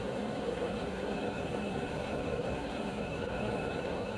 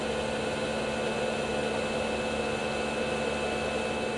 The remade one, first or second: first